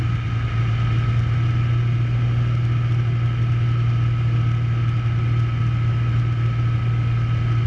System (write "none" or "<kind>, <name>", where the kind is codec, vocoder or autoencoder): none